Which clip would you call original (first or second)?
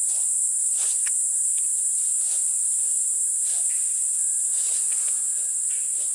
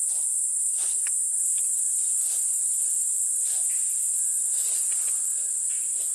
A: second